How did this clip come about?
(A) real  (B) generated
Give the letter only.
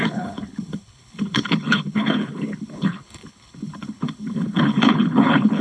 B